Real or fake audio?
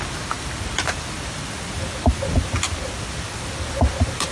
real